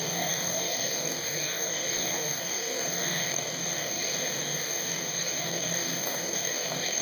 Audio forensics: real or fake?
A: fake